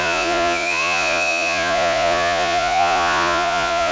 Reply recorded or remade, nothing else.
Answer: remade